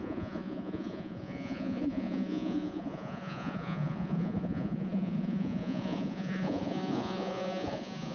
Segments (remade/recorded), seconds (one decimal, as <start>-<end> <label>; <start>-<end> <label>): 0.0-8.1 remade